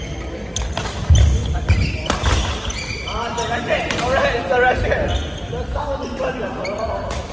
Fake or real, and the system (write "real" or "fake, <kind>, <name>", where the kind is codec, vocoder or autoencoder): real